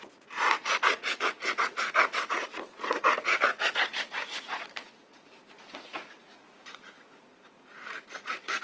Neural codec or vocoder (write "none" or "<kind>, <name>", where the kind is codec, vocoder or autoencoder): vocoder, Vocos